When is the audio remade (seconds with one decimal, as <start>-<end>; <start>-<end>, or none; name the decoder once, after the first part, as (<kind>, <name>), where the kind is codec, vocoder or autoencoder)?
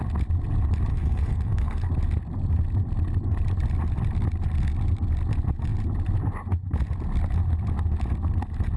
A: 0.9-1.9 (codec, SNAC)